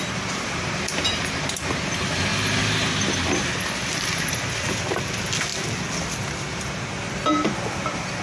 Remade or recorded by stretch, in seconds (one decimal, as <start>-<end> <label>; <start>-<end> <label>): 0.0-8.2 recorded